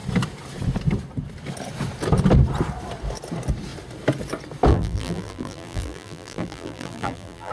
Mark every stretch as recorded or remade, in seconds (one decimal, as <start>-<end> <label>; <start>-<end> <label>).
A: 0.0-4.7 recorded; 4.7-7.5 remade